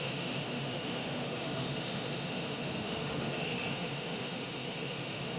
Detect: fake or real fake